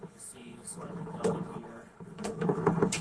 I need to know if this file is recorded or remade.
remade